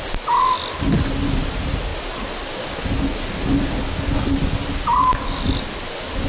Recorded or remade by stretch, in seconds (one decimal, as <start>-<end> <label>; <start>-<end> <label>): 0.0-6.3 recorded